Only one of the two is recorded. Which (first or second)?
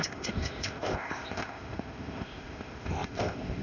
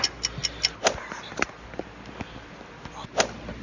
second